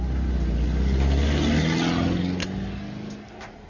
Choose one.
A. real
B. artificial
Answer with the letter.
A